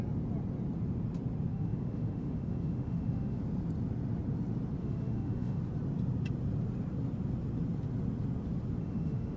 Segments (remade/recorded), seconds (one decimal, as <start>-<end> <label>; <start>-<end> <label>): 0.0-1.5 recorded; 1.5-3.4 remade; 3.4-4.8 recorded; 4.8-5.6 remade; 5.6-8.8 recorded; 8.8-9.4 remade